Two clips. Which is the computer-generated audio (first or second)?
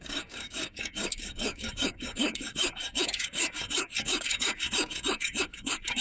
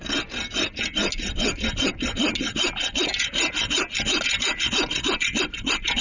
first